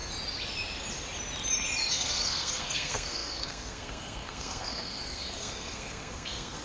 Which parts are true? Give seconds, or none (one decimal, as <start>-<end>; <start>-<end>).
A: 0.0-1.9